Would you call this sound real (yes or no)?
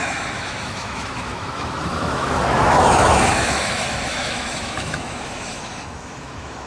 no